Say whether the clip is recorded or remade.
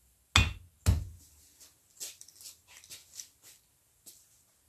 recorded